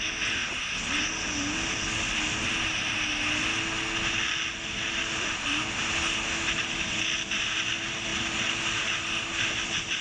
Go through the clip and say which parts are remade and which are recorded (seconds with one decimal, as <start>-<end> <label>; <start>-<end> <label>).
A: 0.0-10.0 recorded